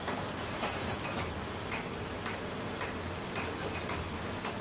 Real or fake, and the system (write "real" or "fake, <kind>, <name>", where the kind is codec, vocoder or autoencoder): real